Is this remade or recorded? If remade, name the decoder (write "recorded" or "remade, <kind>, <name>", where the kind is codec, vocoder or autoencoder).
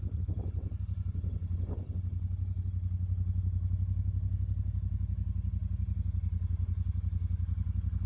recorded